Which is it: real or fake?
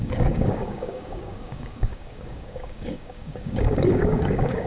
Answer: fake